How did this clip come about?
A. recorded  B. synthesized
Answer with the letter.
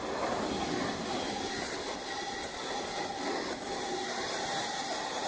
A